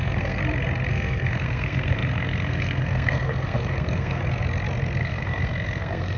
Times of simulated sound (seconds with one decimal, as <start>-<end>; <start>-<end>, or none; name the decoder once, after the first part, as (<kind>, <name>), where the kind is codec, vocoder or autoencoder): 0.0-0.4 (codec, SNAC); 0.9-4.2; 5.0-6.2